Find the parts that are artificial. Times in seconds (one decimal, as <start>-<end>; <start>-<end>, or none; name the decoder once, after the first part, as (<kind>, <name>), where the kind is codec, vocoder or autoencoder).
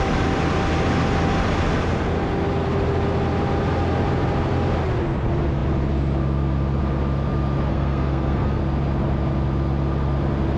7.7-8.6 (codec, SNAC)